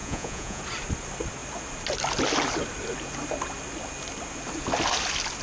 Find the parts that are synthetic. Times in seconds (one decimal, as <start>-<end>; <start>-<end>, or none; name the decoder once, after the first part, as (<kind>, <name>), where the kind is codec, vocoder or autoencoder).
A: 0.0-0.6 (vocoder, Vocos)